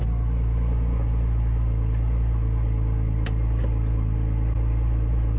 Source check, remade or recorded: recorded